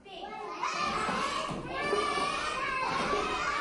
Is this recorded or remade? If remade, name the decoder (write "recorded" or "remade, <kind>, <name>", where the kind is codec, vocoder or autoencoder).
recorded